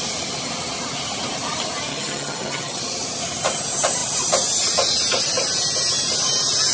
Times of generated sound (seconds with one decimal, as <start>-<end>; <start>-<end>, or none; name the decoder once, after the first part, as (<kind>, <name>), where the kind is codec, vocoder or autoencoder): 1.9-2.8 (vocoder, HiFi-GAN)